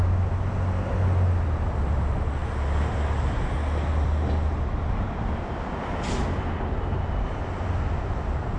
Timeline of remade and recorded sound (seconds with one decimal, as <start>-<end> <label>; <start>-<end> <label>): 0.0-8.6 recorded